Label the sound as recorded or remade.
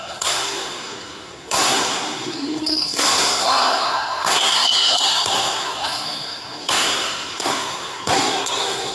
remade